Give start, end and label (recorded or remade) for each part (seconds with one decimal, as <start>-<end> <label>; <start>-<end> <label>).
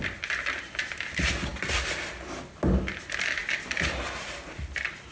0.0-5.1 recorded